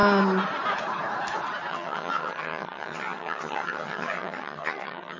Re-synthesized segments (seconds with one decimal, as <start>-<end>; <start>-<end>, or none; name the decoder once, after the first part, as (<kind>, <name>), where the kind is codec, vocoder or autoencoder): 1.7-5.2 (vocoder, HiFi-GAN)